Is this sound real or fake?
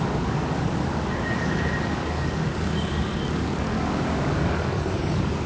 fake